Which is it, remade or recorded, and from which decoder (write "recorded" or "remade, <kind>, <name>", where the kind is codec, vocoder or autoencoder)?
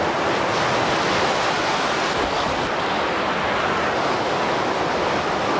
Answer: recorded